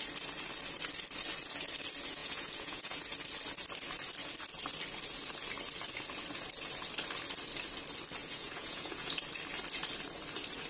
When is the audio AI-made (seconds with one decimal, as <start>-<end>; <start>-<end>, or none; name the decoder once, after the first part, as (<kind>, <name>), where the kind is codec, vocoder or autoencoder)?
2.2-3.0 (vocoder, Vocos); 8.2-9.2